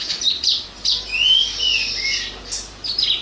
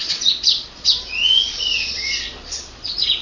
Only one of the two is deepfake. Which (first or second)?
second